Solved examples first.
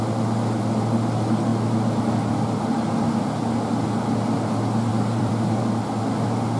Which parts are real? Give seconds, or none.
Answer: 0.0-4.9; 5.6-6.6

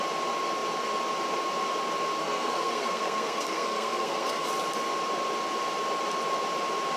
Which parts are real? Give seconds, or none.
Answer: 0.0-2.2; 4.5-7.0

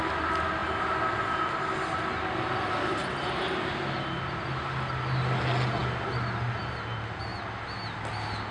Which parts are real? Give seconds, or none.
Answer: 0.0-8.5